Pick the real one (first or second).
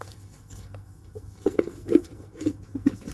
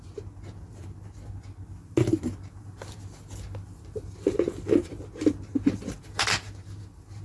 second